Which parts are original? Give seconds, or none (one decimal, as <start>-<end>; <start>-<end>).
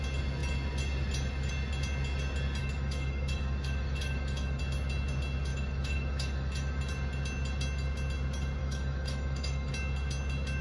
0.0-2.6; 4.6-5.5; 6.8-8.6; 9.7-10.6